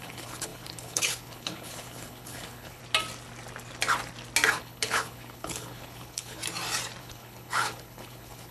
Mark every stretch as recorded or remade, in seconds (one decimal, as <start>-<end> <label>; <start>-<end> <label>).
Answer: 0.0-2.8 remade; 2.8-4.6 recorded; 4.6-6.4 remade; 6.4-7.0 recorded; 7.0-8.5 remade